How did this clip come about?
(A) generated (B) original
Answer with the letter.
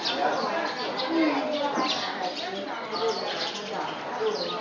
B